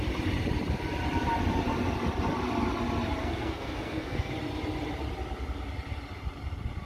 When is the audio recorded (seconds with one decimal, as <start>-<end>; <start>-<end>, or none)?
0.0-3.2; 4.3-6.9